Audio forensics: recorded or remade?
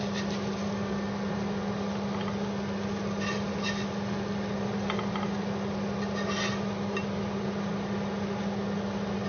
recorded